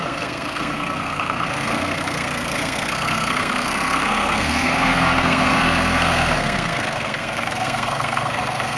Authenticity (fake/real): fake